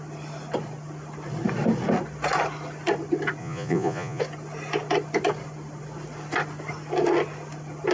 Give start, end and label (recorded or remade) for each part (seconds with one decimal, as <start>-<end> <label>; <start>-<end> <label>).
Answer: 0.0-3.4 recorded; 3.4-4.2 remade; 4.2-7.9 recorded